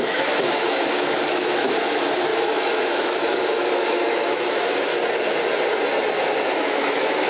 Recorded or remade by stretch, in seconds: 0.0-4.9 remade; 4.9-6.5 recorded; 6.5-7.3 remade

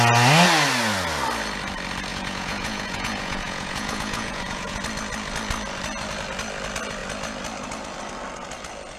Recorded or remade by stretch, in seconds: 0.0-2.1 recorded; 2.1-4.8 remade; 4.8-9.0 recorded

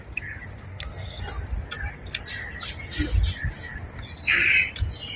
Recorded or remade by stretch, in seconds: 0.0-0.7 recorded; 0.7-1.2 remade; 1.2-5.2 recorded

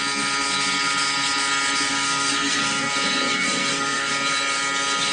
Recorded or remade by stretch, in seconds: 0.0-1.9 recorded; 1.9-2.9 remade; 2.9-3.3 recorded; 3.3-4.1 remade; 4.1-5.1 recorded

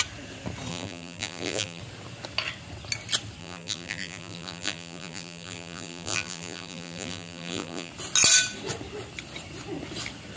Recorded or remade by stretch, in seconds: 0.0-0.7 recorded; 0.7-1.8 remade; 1.8-3.4 recorded; 3.4-7.9 remade; 7.9-10.4 recorded

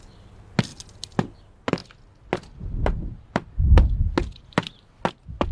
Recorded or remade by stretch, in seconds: 0.0-5.5 recorded

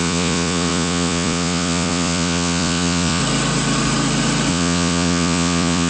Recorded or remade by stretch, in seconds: 0.0-3.2 remade; 3.2-4.5 recorded; 4.5-5.9 remade